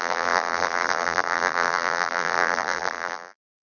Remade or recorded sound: remade